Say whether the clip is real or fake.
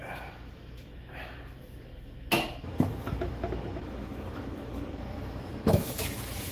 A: fake